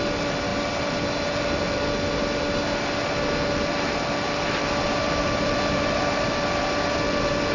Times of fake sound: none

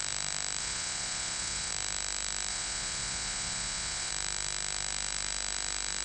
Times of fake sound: 0.6-1.7 (vocoder, Vocos); 2.5-4.1

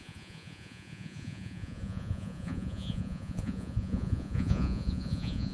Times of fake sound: 0.0-5.5 (vocoder, Vocos)